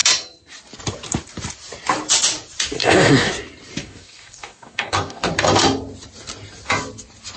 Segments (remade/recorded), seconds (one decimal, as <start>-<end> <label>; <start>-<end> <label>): 0.0-2.8 recorded; 2.8-3.3 remade; 3.3-3.8 recorded; 3.8-5.3 remade; 5.3-7.4 recorded